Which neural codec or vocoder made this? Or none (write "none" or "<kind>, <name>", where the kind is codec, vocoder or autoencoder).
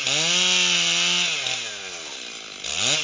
none